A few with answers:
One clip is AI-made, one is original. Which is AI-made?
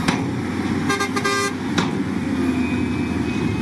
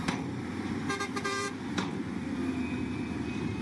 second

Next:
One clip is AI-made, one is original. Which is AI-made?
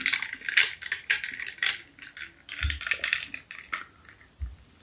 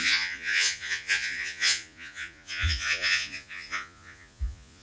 second